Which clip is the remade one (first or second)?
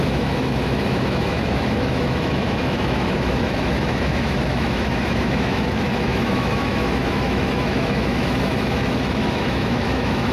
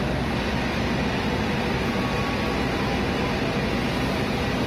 first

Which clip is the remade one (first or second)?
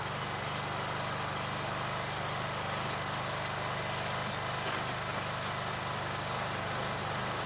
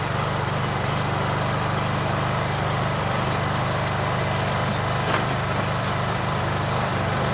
second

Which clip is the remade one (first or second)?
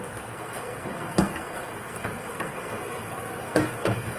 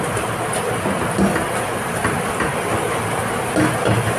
first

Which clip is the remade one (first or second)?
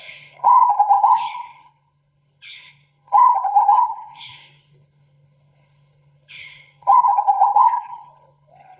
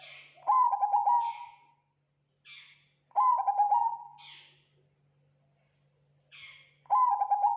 first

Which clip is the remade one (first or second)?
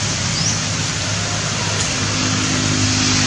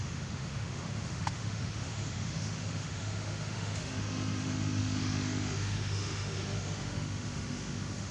second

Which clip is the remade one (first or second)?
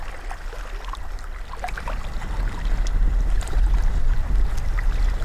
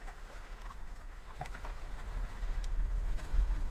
second